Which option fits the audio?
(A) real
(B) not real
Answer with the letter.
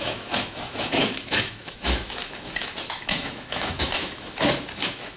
B